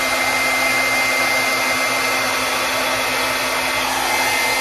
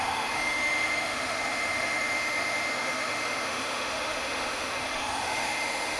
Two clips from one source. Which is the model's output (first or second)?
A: second